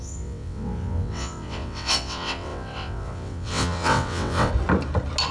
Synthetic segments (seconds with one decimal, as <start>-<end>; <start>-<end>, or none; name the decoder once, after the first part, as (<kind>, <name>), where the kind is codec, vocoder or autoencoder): 0.0-4.5 (vocoder, WaveNeXt)